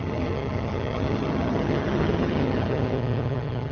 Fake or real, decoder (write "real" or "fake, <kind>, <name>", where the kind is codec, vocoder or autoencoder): fake, vocoder, HiFi-GAN